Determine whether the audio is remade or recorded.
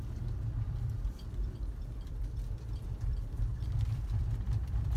remade